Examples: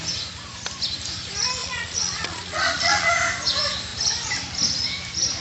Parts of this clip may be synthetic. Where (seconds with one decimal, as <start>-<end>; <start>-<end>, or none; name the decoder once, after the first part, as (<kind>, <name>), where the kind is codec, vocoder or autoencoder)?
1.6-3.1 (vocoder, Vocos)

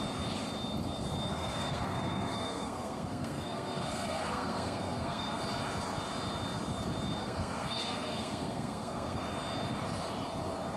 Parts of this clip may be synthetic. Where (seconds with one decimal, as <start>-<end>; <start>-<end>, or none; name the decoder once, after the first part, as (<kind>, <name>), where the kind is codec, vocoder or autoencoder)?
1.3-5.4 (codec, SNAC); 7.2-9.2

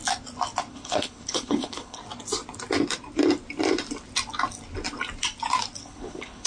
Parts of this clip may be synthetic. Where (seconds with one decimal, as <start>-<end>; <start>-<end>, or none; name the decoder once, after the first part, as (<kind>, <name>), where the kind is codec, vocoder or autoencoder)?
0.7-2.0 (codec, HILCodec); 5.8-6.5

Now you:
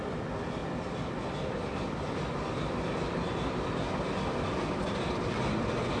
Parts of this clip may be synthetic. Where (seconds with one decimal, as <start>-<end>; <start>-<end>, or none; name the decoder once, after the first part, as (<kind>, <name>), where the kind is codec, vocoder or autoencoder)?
none